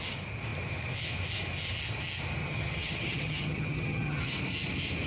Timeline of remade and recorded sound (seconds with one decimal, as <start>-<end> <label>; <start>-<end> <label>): 0.0-2.4 recorded; 2.4-4.3 remade; 4.3-5.1 recorded